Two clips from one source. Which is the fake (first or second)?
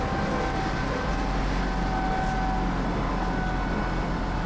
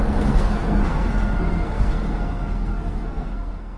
second